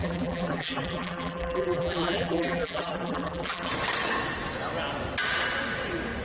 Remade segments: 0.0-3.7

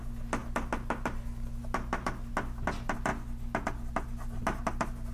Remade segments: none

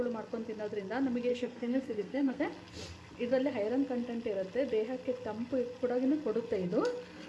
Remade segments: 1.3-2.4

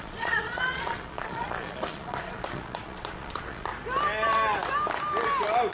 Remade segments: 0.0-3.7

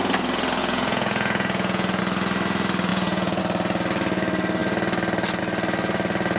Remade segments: 0.6-2.0; 2.9-3.4

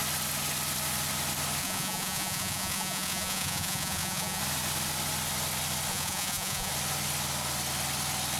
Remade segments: 1.6-4.4; 5.9-6.7